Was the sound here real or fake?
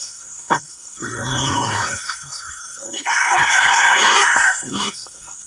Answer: fake